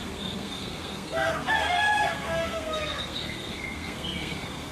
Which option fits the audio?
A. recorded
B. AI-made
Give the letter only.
B